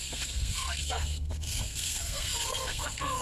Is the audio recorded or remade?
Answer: remade